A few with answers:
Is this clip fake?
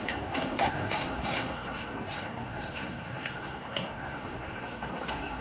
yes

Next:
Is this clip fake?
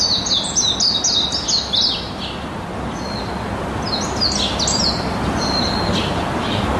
no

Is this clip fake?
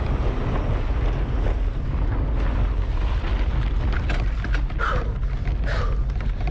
no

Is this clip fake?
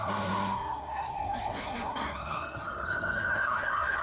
yes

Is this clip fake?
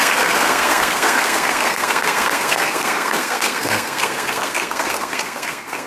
yes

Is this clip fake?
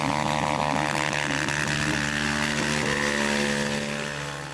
no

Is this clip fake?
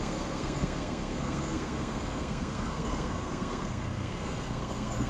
yes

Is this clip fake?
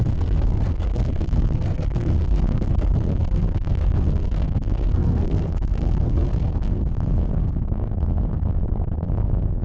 yes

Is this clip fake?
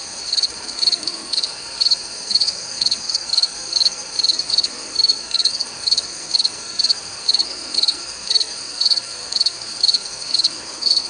yes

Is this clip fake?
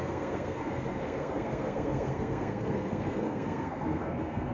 yes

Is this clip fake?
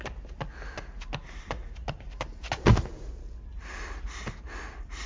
no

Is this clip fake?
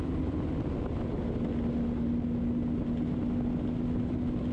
no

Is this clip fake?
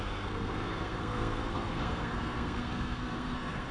yes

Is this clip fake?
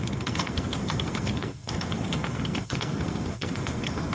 yes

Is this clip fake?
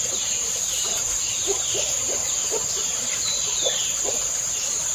no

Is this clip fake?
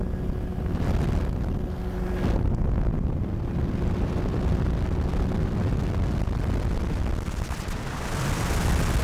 no